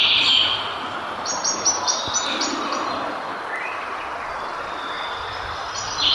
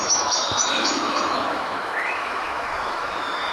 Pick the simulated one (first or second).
second